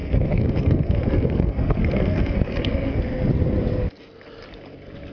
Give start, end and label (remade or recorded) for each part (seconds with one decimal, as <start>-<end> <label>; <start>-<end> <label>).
0.0-3.0 remade; 3.0-5.1 recorded